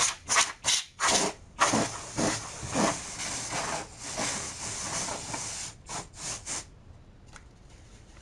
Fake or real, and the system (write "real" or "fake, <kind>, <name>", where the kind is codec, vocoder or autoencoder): real